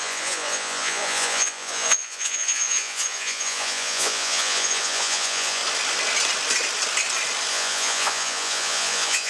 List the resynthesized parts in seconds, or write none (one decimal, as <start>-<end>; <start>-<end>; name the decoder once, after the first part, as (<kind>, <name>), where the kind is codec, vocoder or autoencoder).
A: 0.0-5.6 (vocoder, Vocos); 7.5-9.3

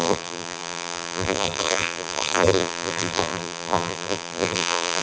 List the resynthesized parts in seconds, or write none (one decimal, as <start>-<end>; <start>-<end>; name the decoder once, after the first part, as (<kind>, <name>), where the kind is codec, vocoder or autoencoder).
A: 0.0-5.0 (vocoder, BigVGAN v2)

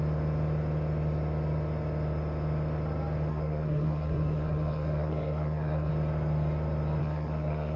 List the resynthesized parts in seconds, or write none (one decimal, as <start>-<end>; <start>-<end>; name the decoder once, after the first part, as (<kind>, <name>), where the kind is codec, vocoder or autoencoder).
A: 3.3-5.9 (codec, SNAC); 7.0-7.8

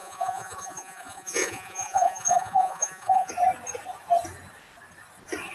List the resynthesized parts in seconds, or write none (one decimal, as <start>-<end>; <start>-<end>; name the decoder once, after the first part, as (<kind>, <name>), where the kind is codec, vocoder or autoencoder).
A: 0.0-3.3 (vocoder, Vocos)

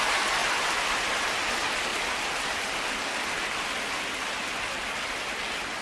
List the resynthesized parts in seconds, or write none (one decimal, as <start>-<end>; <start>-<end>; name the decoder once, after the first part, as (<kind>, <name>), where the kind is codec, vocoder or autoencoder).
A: none